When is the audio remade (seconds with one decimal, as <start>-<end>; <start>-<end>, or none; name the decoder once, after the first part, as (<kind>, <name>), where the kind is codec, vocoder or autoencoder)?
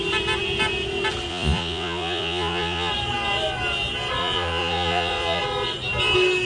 1.3-2.9 (vocoder, Vocos); 4.2-5.4